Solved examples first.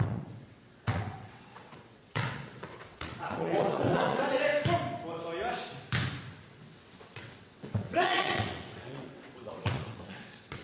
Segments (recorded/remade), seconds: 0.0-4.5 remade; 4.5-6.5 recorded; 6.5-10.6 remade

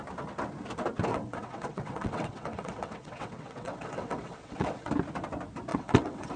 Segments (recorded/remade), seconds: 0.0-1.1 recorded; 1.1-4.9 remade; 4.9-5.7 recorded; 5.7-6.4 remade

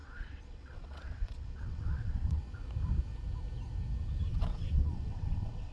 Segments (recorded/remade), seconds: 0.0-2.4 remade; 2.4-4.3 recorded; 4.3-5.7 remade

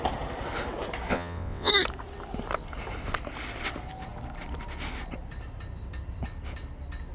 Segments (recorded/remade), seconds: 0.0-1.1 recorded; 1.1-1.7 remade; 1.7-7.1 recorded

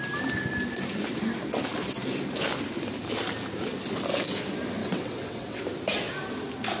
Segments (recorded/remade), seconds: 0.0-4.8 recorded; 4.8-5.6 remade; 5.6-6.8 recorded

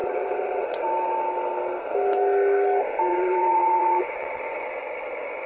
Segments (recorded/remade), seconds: 0.0-0.9 remade; 0.9-3.1 recorded; 3.1-4.8 remade; 4.8-5.5 recorded